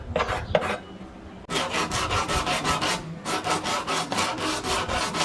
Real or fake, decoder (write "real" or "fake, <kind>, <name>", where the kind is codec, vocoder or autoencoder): real